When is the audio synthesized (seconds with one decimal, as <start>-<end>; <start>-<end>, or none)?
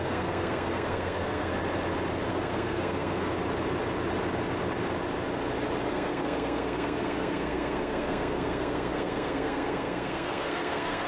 0.0-1.5; 2.3-3.3; 5.9-11.1